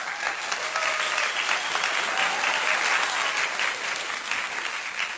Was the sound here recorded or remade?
recorded